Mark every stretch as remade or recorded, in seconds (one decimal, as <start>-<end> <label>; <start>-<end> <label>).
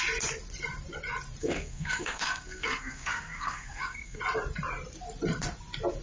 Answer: 0.0-1.4 recorded; 1.4-4.2 remade; 4.2-6.0 recorded